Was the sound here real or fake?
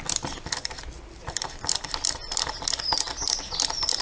real